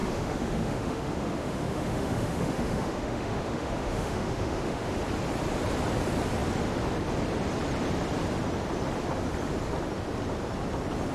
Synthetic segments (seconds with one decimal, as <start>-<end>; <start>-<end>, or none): 0.0-5.0